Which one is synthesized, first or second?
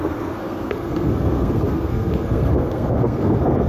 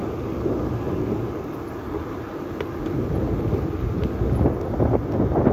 first